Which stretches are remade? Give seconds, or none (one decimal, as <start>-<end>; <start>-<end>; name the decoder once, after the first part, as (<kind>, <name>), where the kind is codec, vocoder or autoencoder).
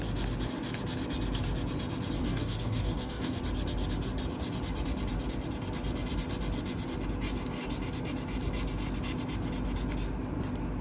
2.2-3.4 (codec, DAC)